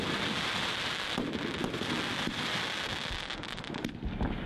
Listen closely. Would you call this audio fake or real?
real